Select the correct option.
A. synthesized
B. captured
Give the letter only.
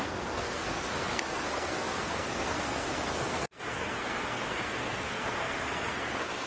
A